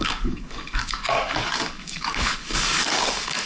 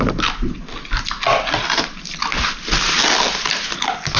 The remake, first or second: first